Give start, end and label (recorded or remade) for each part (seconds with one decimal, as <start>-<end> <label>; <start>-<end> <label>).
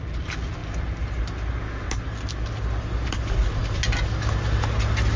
0.0-5.2 recorded